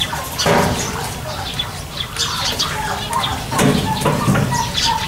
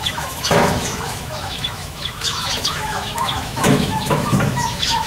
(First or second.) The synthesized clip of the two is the second